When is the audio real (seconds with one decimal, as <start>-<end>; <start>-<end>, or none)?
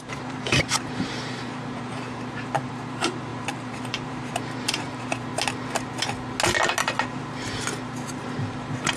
5.3-7.1